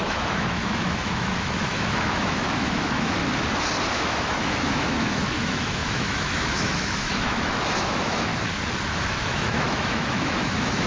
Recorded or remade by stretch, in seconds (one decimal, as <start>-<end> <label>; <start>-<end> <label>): 0.0-3.2 remade; 3.2-3.9 recorded; 3.9-8.3 remade; 8.3-9.0 recorded; 9.0-10.9 remade